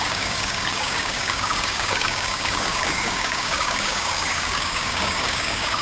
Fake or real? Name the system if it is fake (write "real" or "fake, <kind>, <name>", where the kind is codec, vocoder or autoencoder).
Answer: fake, codec, DAC